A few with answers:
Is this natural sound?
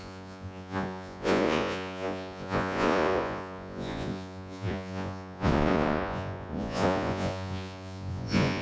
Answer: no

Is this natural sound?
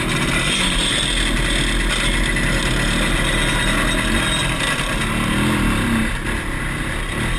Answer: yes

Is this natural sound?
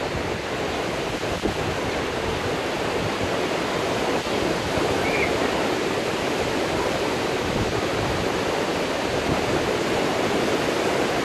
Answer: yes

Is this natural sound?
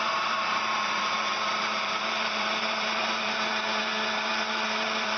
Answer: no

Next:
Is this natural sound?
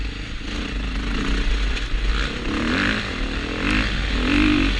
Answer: yes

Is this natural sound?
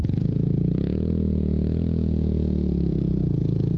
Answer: no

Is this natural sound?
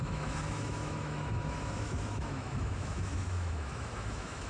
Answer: no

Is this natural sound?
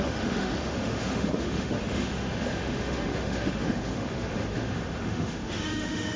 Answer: no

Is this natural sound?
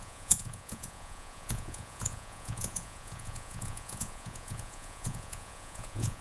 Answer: no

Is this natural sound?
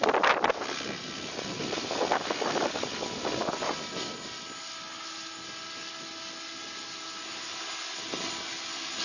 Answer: yes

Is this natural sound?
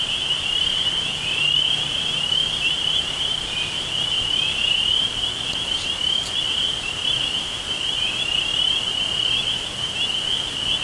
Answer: yes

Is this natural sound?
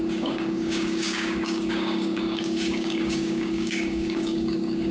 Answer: no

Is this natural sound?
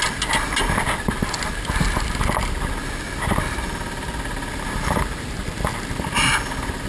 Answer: yes